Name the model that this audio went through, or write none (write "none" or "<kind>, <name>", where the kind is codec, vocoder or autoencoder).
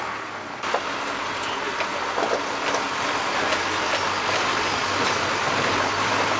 none